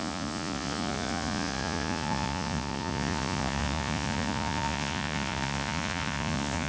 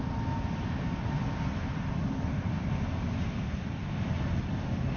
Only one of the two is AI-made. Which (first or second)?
first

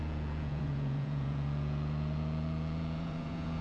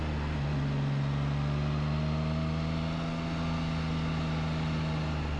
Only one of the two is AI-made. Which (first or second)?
first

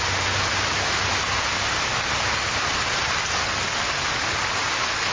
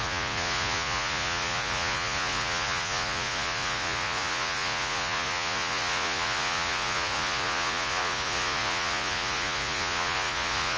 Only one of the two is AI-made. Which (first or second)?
second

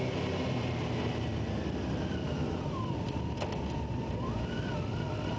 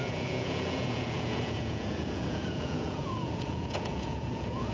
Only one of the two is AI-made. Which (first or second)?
second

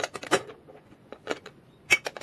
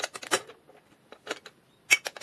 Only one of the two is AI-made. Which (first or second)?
first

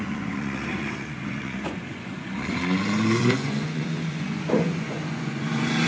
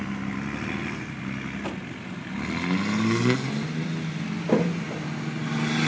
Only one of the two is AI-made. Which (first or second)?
first